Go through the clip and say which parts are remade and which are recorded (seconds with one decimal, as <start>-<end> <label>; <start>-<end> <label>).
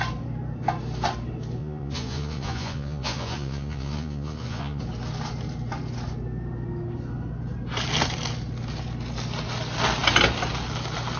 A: 0.0-1.6 recorded; 1.6-4.8 remade; 4.8-11.2 recorded